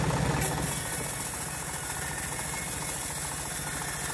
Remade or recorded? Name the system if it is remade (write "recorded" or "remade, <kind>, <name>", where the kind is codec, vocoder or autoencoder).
recorded